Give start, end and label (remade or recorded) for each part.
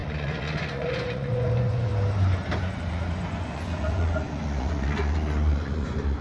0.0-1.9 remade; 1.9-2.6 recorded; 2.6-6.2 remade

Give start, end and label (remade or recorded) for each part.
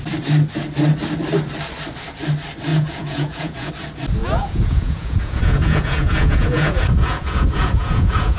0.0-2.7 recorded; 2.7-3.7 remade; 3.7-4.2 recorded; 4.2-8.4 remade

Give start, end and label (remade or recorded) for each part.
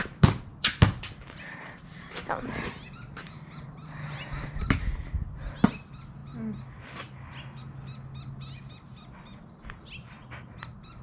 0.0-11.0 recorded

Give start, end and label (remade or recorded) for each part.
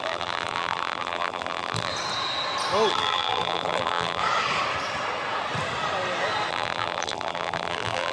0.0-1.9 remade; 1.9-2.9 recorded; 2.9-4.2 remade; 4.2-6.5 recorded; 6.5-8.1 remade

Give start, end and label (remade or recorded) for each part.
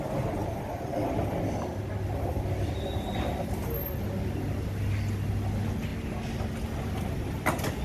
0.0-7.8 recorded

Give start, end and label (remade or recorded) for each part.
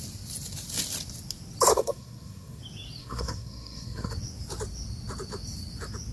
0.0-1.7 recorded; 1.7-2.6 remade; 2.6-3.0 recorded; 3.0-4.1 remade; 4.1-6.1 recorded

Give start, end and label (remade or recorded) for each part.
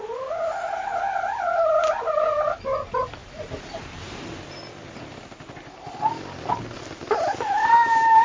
0.0-3.2 remade; 3.2-4.2 recorded; 4.2-8.2 remade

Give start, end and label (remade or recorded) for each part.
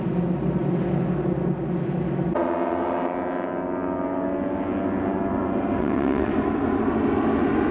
0.0-5.8 recorded; 5.8-6.3 remade; 6.3-7.7 recorded